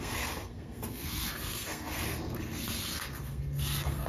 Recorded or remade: remade